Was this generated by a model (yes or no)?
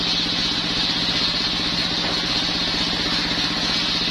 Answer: no